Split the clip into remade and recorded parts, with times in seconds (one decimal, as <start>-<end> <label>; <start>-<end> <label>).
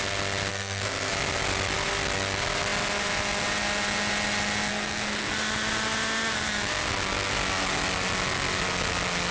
0.0-0.5 recorded; 0.5-1.1 remade; 1.1-4.7 recorded; 4.7-5.3 remade; 5.3-9.3 recorded